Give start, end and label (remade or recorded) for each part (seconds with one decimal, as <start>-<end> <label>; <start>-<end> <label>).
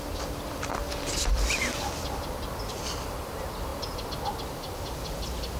0.0-5.6 recorded